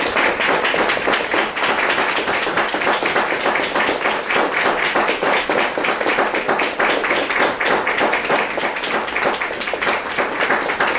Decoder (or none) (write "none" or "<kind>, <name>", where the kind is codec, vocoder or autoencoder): none